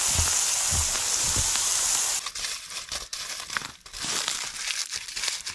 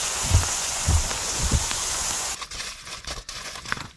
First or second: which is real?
first